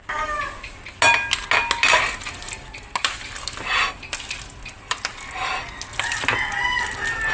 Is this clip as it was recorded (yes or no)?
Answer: yes